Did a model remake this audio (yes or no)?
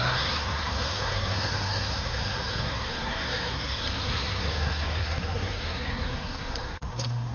yes